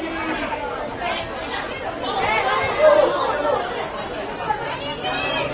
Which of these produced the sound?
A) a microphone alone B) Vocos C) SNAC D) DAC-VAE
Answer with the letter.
A